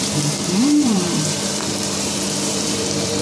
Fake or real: fake